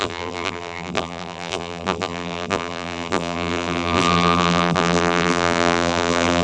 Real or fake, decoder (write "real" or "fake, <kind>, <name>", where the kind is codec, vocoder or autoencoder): fake, vocoder, BigVGAN v2